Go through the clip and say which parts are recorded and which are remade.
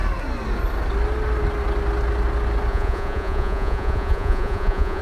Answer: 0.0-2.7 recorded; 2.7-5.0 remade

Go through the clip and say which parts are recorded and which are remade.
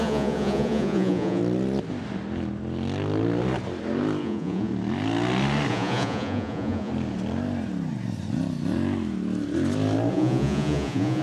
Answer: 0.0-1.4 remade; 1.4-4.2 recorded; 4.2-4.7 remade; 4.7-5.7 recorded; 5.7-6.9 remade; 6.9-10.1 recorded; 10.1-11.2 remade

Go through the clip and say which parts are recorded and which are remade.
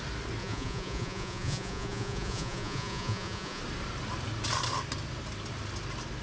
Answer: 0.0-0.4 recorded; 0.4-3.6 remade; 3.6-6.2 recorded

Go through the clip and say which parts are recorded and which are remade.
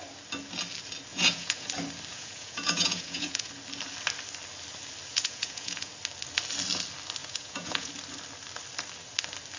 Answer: 0.0-1.1 recorded; 1.1-1.7 remade; 1.7-2.1 recorded; 2.1-3.5 remade; 3.5-5.1 recorded; 5.1-5.9 remade; 5.9-7.2 recorded; 7.2-7.9 remade; 7.9-9.6 recorded